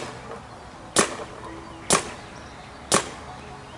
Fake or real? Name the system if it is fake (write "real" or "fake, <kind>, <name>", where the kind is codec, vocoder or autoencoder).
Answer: real